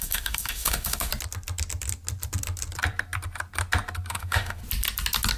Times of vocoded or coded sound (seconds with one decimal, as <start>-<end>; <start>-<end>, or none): 0.0-1.1; 4.1-4.6